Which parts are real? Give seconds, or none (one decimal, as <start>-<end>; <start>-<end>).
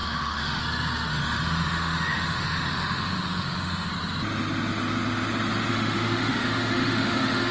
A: 0.6-1.1; 3.9-5.7